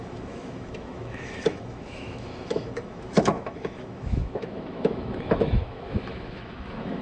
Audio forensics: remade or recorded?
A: remade